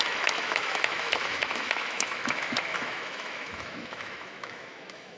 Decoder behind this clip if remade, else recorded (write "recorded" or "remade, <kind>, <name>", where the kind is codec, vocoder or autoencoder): remade, autoencoder, DAC-VAE